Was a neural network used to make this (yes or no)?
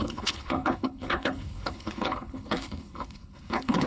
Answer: yes